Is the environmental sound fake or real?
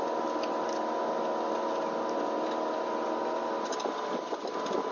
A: real